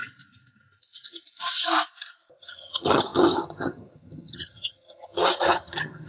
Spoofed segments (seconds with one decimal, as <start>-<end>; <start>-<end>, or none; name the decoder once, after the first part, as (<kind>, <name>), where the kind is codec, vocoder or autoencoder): 2.4-6.1 (vocoder, HiFi-GAN)